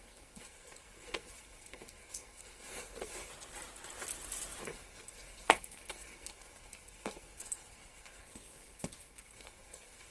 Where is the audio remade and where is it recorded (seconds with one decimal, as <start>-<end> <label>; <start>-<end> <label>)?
0.0-3.3 remade; 3.3-4.6 recorded; 4.6-10.1 remade